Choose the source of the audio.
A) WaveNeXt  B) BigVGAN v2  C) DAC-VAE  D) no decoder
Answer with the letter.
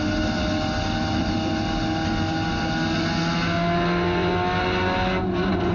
D